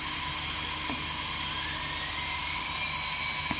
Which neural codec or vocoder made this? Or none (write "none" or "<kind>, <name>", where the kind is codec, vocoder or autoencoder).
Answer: none